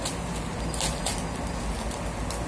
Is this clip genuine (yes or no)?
yes